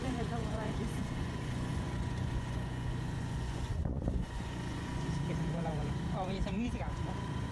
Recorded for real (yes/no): no